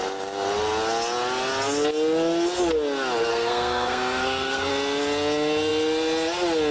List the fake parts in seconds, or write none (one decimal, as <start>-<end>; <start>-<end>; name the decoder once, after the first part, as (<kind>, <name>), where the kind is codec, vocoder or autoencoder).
3.3-4.7 (codec, SNAC)